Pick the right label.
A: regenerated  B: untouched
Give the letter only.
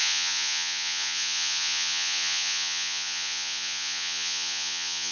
A